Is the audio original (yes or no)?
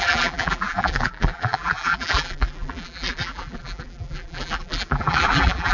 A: no